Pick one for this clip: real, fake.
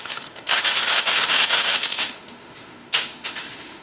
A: fake